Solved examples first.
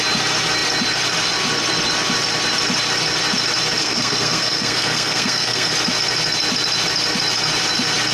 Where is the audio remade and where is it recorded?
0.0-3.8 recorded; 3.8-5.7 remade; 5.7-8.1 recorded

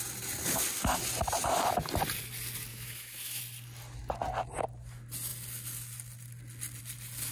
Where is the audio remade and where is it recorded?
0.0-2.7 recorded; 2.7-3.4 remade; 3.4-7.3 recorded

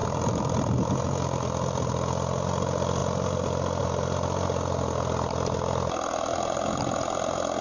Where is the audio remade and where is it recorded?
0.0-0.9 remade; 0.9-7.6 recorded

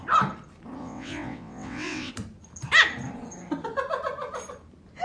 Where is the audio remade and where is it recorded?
0.0-0.8 recorded; 0.8-2.1 remade; 2.1-5.0 recorded

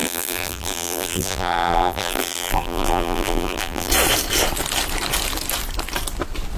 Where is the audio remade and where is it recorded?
0.0-3.9 remade; 3.9-6.6 recorded

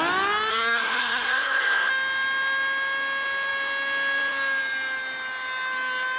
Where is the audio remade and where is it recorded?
0.0-0.5 recorded; 0.5-1.9 remade; 1.9-6.2 recorded

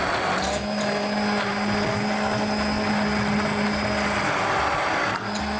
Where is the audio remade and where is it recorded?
0.0-5.6 recorded